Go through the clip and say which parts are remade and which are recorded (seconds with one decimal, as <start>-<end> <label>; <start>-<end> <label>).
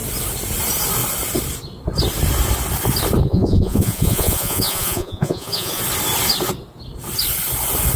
0.0-3.3 recorded; 3.3-5.8 remade; 5.8-8.0 recorded